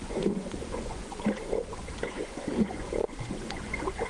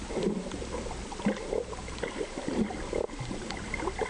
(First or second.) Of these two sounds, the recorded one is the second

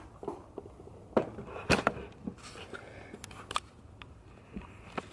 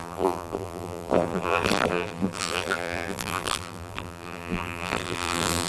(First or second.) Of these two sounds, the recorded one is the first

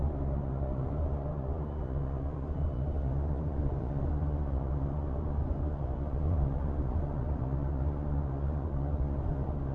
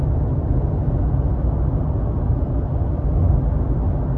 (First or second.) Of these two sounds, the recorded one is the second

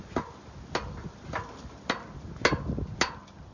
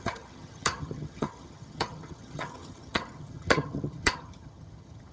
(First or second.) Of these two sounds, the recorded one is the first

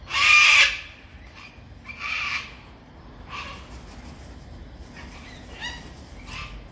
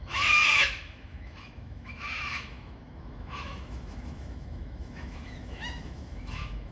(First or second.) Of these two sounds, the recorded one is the first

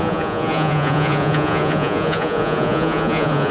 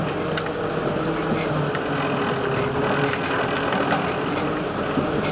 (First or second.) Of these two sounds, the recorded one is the second